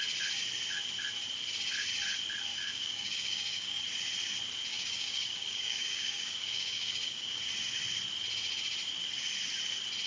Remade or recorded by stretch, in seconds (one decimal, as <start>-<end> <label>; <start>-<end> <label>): 0.0-2.5 recorded; 2.5-3.8 remade; 3.8-4.7 recorded; 4.7-7.4 remade; 7.4-10.1 recorded